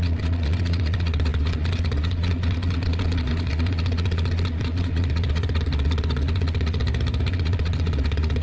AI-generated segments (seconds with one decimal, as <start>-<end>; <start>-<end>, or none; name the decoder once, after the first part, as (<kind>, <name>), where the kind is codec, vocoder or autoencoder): 0.0-6.8 (vocoder, Vocos); 7.3-8.4